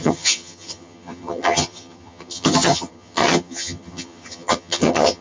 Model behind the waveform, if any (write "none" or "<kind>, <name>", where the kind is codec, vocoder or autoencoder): vocoder, HiFi-GAN